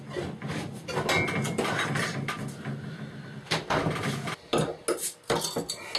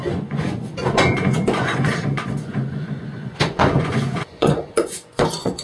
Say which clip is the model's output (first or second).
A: second